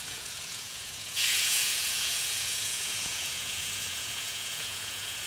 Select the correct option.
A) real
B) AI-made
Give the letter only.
B